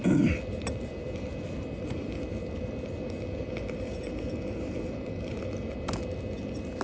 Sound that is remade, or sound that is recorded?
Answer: recorded